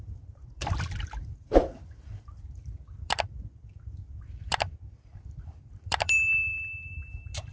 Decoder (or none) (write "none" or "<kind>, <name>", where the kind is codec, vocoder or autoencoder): vocoder, BigVGAN v2